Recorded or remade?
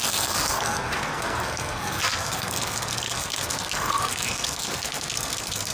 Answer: remade